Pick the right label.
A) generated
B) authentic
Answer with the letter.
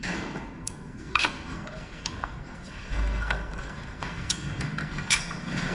A